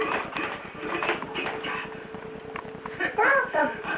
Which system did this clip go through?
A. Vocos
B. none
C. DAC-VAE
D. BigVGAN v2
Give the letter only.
B